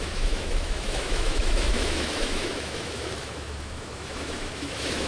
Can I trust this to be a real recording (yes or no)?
no